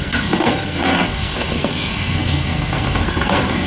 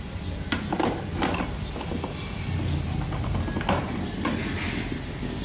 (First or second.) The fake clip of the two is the first